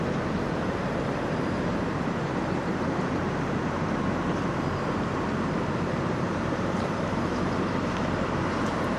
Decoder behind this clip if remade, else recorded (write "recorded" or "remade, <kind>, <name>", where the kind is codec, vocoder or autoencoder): remade, vocoder, BigVGAN v2